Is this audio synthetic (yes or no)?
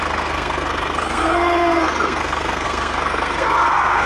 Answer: yes